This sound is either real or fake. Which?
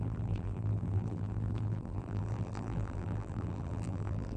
fake